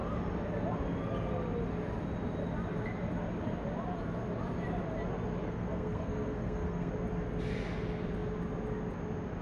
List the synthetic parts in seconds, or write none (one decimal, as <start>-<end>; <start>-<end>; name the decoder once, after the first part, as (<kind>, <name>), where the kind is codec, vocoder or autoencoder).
5.4-6.9 (codec, SNAC)